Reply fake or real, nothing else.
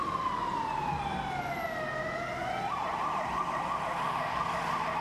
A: real